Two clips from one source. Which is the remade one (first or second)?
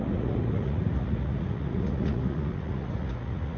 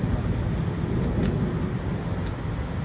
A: first